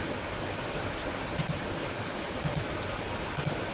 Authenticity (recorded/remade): recorded